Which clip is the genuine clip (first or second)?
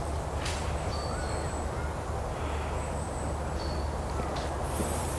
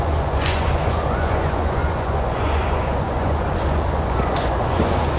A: first